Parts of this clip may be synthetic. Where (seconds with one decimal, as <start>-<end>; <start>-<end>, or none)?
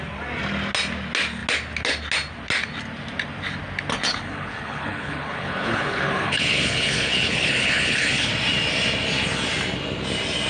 4.1-8.3